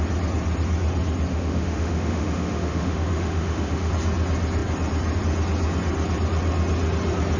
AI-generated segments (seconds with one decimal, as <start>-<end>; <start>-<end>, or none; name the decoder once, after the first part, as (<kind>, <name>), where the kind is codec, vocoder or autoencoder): 1.3-3.9 (autoencoder, DAC-VAE)